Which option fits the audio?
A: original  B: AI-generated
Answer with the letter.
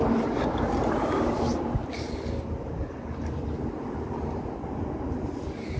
A